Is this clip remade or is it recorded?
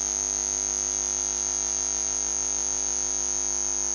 recorded